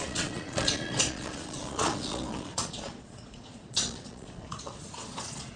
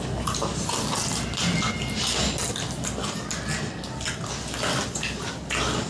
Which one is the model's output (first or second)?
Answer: first